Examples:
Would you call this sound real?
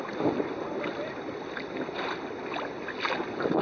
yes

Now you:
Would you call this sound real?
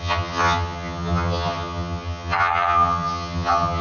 no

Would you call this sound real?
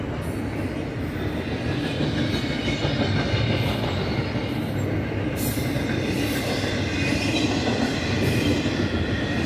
yes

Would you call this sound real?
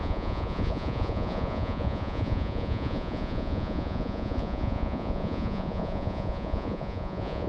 no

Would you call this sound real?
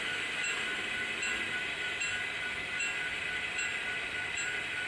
yes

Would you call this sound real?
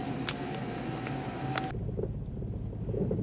yes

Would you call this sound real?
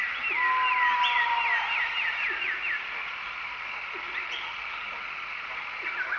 yes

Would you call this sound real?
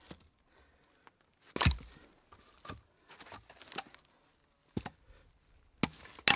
yes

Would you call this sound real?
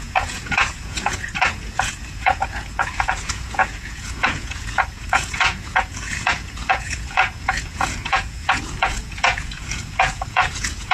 no